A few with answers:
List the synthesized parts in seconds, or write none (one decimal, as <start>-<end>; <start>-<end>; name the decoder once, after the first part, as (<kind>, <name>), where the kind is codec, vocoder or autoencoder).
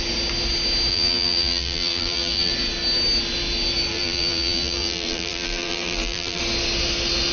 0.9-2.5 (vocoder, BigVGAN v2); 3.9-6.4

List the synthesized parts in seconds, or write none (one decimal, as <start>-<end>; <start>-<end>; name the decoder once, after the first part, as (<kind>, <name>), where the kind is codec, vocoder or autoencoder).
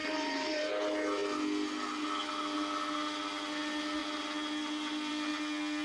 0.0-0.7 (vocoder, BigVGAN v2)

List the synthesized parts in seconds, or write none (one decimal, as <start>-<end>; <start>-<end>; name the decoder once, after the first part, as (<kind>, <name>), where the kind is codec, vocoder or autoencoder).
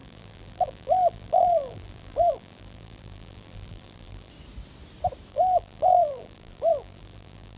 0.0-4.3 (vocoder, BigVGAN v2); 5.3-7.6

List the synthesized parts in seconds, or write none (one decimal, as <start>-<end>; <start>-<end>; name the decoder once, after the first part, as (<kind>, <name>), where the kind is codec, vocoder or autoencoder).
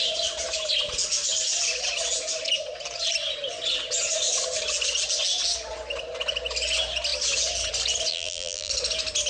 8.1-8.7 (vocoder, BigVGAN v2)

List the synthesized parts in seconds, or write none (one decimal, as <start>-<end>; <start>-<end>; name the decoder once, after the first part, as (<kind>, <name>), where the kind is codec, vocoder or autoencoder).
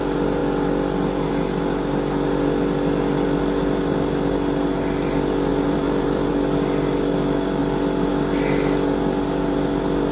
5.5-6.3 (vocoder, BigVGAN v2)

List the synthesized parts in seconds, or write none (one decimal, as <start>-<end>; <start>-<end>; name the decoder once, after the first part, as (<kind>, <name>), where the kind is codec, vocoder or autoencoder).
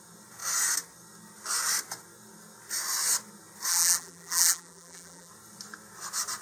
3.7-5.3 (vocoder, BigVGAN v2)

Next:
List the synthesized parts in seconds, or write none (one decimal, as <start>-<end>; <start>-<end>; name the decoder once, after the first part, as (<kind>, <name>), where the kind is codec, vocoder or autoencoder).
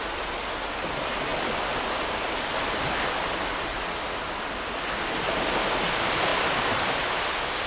6.3-7.0 (vocoder, BigVGAN v2)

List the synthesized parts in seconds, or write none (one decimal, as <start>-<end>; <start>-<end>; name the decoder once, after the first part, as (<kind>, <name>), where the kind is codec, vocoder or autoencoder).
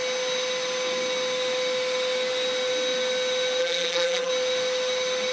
3.6-4.3 (vocoder, BigVGAN v2)